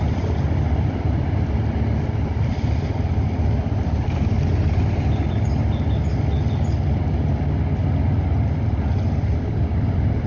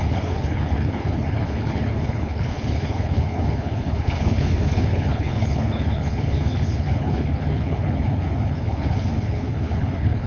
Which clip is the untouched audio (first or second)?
first